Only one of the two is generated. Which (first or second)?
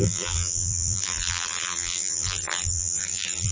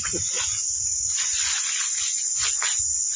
first